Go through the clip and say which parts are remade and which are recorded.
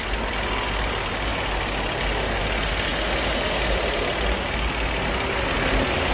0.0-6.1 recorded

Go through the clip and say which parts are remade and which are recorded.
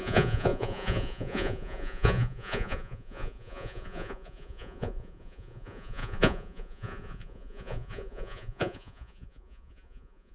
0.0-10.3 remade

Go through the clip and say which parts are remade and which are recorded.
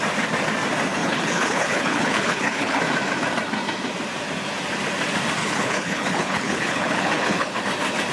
0.0-1.0 recorded; 1.0-2.8 remade; 2.8-5.4 recorded; 5.4-7.6 remade; 7.6-8.1 recorded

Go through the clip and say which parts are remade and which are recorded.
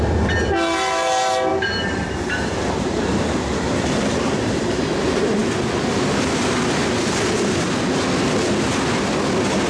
0.0-1.5 recorded; 1.5-4.8 remade; 4.8-9.7 recorded